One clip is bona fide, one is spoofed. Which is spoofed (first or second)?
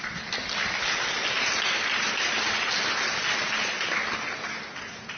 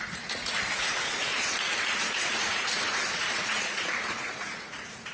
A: second